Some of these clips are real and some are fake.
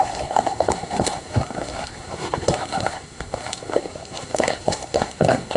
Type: fake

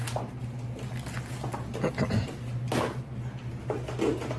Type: real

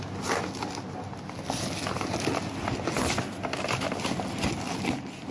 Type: real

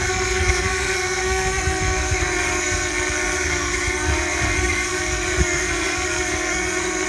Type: fake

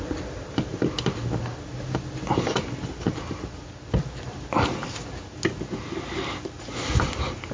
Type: real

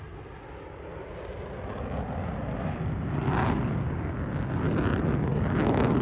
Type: real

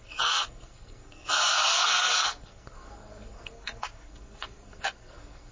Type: fake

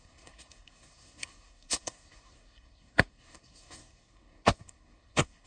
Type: fake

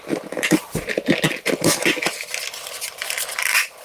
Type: real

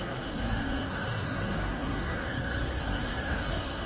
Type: fake